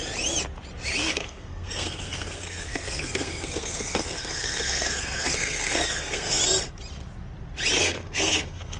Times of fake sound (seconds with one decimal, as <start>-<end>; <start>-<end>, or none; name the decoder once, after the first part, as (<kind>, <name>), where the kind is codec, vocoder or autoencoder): 1.0-6.4 (codec, SNAC); 7.8-8.8